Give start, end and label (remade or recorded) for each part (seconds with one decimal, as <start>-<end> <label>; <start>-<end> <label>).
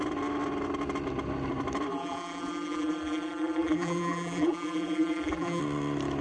0.0-1.9 recorded; 1.9-5.6 remade; 5.6-6.2 recorded